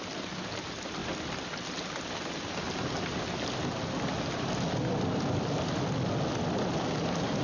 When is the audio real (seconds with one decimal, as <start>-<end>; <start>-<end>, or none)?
0.0-7.4